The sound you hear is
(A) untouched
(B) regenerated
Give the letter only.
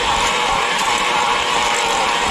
B